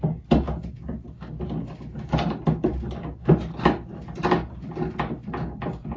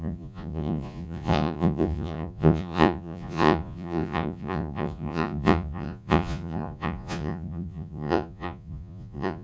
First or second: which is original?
first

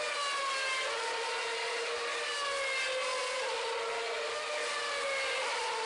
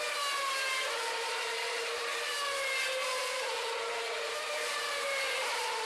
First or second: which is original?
first